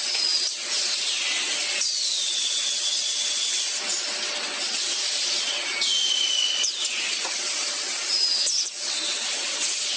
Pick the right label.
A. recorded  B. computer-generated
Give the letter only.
A